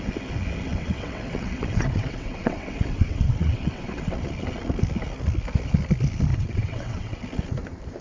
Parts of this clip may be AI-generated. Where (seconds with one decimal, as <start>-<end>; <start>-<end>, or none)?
0.7-4.3; 6.3-7.2